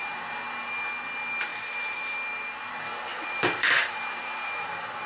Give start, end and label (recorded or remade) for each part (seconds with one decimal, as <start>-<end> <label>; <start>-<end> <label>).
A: 0.0-1.5 recorded; 1.5-2.7 remade; 2.7-3.1 recorded; 3.1-5.1 remade